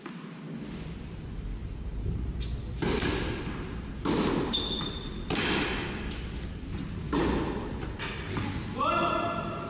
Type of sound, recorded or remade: recorded